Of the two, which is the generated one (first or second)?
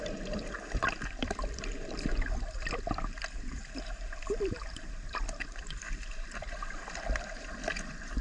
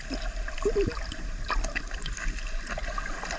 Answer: first